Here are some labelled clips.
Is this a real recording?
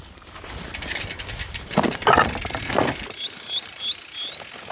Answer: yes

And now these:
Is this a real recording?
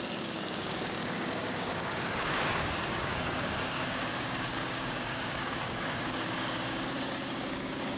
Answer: no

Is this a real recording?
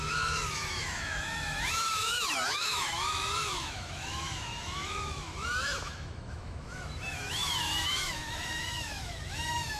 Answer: no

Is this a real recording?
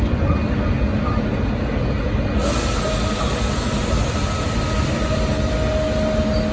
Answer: yes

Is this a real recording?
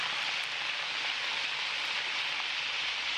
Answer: yes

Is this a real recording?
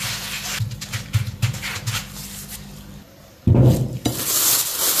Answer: yes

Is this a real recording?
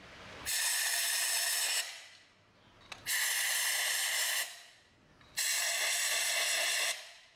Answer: yes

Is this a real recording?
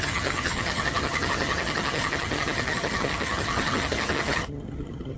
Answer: no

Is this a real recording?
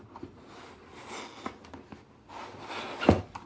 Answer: yes